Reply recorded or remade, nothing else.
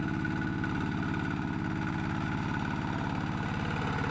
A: recorded